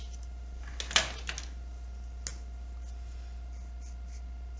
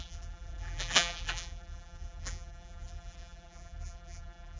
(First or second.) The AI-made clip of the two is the second